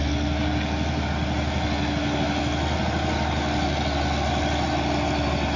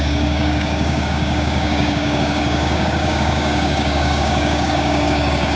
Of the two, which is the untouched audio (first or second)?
first